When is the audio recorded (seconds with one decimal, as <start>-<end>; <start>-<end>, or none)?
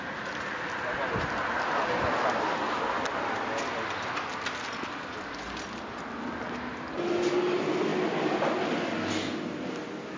0.0-10.2